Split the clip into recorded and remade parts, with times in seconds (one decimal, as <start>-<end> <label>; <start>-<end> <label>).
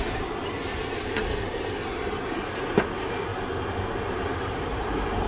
0.0-3.3 remade; 3.3-4.0 recorded; 4.0-5.3 remade